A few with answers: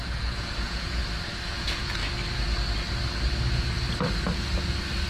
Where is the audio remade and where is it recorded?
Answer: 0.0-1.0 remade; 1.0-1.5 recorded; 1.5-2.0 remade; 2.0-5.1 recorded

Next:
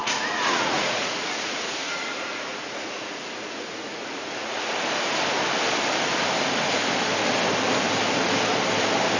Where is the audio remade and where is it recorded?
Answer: 0.0-4.7 remade; 4.7-9.2 recorded

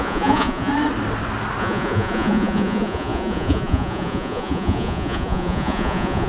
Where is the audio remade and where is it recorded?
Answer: 0.0-0.7 remade; 0.7-1.6 recorded; 1.6-6.3 remade

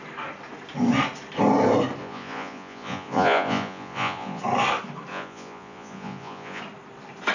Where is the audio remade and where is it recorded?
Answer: 0.0-2.0 recorded; 2.0-4.4 remade; 4.4-5.1 recorded; 5.1-6.6 remade; 6.6-7.3 recorded

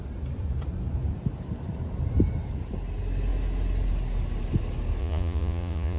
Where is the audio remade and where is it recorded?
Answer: 0.0-5.0 recorded; 5.0-6.0 remade

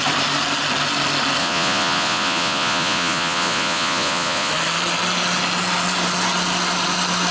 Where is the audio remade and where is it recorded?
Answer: 0.0-1.4 recorded; 1.4-4.5 remade; 4.5-7.3 recorded